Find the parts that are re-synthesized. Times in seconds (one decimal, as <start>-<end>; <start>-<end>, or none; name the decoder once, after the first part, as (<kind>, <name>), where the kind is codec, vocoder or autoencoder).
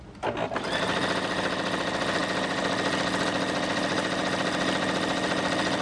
none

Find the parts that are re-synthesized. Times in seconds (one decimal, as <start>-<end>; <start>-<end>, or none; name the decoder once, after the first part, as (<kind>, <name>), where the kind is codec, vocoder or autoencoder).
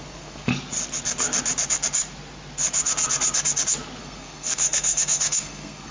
0.0-0.5 (codec, SNAC); 4.0-5.9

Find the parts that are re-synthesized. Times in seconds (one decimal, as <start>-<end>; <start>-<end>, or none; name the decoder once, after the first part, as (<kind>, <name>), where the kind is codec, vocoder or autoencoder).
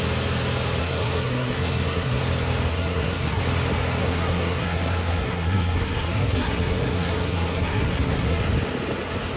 0.8-2.2 (codec, SNAC); 2.7-3.4; 4.0-8.4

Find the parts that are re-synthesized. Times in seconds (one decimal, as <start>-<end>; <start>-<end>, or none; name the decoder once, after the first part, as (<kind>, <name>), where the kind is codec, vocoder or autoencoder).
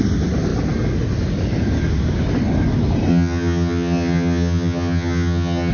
3.1-5.7 (vocoder, HiFi-GAN)